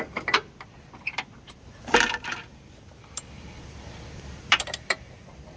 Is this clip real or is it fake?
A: fake